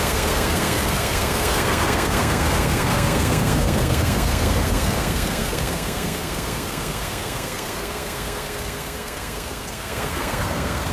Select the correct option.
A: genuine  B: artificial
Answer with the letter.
B